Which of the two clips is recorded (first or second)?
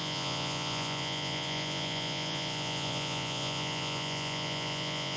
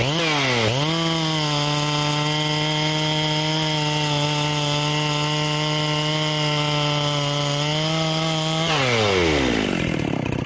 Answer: second